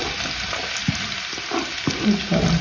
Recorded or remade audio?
recorded